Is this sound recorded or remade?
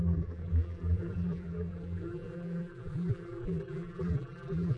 remade